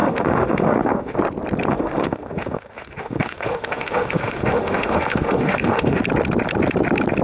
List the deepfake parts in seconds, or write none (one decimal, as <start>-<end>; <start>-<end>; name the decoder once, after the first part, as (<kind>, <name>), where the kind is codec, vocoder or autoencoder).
0.0-1.2 (autoencoder, DAC-VAE); 1.7-6.0